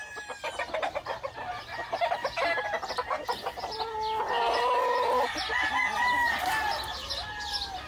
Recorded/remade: recorded